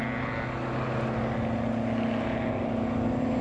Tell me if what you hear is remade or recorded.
recorded